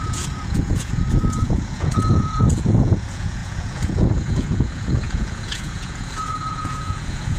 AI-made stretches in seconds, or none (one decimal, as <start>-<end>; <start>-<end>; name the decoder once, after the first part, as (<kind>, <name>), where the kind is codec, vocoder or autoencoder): 0.0-7.4 (vocoder, Vocos)